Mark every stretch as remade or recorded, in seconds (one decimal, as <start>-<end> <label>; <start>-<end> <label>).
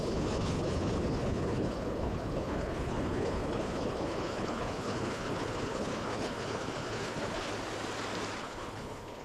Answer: 0.0-7.5 remade; 7.5-8.4 recorded; 8.4-9.2 remade